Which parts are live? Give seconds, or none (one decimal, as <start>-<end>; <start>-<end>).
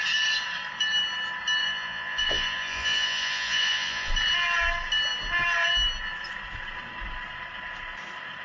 0.0-1.6; 4.1-8.4